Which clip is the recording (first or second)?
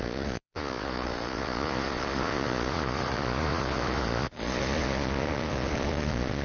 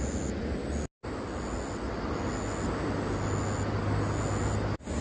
second